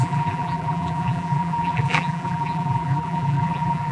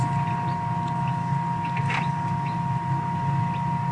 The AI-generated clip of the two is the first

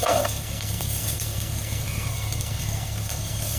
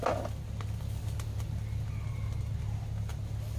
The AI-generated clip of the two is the first